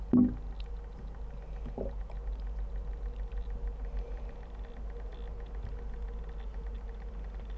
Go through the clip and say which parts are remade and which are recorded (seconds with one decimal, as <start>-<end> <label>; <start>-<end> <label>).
0.0-7.6 recorded